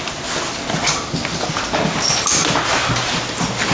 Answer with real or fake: real